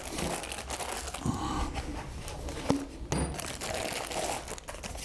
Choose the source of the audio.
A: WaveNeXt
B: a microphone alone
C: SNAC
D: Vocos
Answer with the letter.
B